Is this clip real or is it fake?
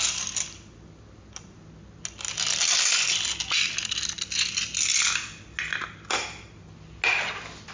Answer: real